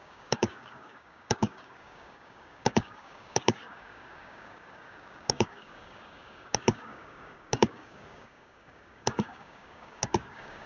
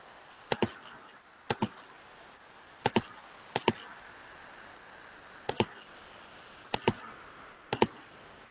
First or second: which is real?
second